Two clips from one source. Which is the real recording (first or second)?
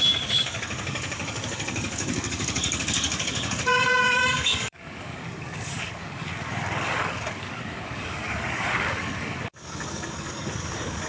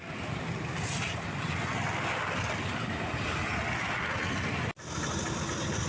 second